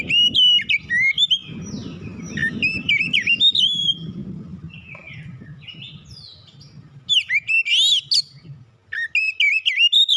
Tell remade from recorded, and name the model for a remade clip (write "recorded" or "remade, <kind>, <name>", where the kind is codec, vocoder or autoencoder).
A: recorded